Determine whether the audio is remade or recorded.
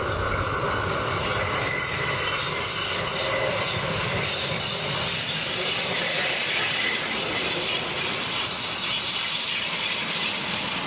recorded